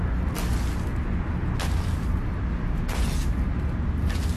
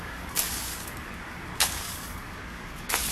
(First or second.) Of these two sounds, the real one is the first